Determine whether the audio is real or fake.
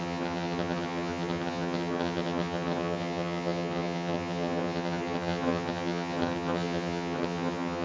fake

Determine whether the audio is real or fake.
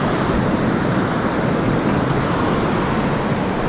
real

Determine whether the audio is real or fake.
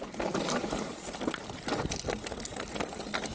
real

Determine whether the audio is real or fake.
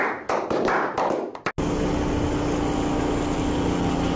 real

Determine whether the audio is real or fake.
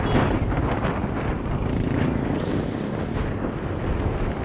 real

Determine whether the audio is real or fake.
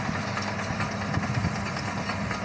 real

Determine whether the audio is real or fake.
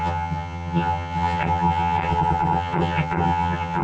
fake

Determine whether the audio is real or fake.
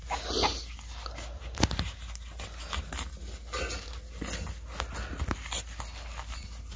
real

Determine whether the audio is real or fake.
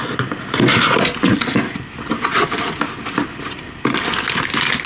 real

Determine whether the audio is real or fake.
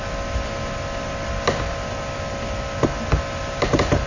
real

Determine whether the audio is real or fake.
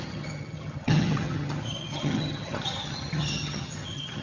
fake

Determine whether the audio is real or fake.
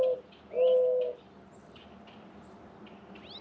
real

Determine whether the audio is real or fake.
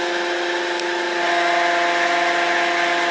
real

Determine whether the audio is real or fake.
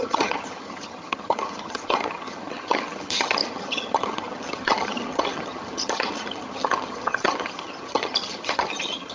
fake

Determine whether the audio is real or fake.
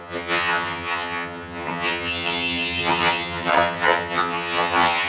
fake